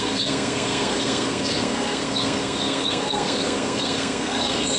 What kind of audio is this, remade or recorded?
remade